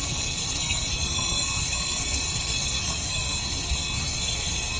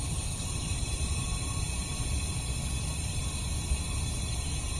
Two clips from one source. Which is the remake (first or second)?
first